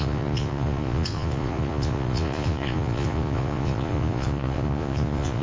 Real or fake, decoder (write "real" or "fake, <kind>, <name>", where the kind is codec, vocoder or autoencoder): fake, vocoder, Vocos